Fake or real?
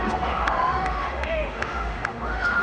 fake